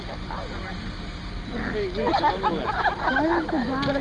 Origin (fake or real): real